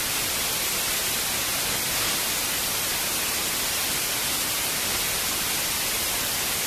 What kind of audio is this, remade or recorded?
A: recorded